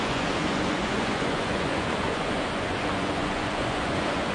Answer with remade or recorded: remade